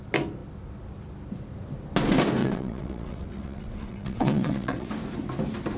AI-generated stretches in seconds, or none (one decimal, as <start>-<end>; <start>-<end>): 2.4-4.9